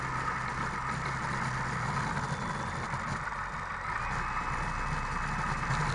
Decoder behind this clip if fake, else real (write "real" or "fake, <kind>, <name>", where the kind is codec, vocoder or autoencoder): real